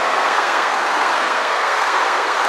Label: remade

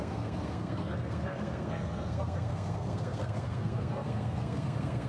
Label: remade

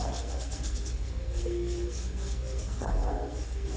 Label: remade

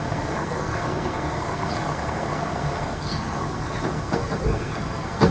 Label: remade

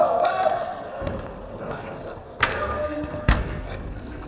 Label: remade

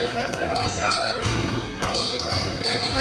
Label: remade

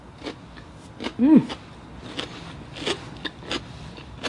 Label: recorded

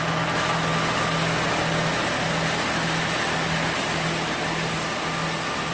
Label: recorded